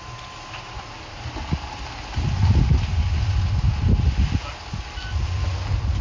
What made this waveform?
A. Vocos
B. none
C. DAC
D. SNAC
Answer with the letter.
B